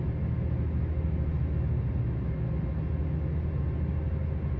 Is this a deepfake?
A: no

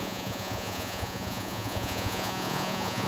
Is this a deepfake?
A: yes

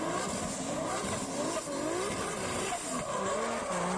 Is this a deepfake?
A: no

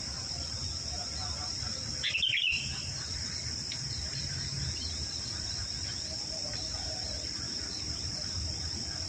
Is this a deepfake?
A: yes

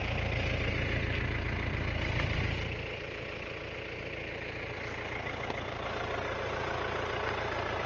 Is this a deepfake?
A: no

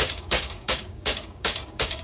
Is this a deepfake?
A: yes